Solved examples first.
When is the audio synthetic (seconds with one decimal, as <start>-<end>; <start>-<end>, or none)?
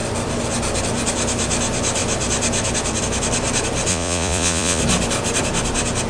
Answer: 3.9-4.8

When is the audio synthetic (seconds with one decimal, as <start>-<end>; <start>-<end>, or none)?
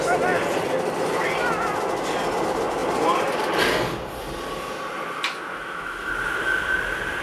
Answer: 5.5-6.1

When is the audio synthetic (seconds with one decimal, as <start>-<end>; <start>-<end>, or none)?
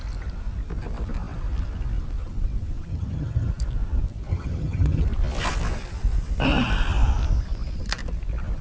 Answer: 2.9-3.5; 4.3-5.0